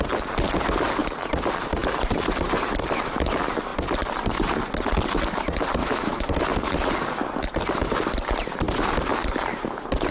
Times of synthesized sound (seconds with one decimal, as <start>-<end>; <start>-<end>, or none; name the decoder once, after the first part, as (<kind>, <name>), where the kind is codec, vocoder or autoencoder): 5.8-6.3 (autoencoder, DAC-VAE)